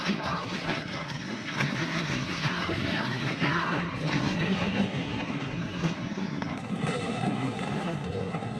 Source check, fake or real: fake